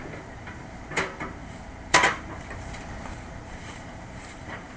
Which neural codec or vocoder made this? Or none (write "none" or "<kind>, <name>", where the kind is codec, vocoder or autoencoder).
vocoder, BigVGAN v2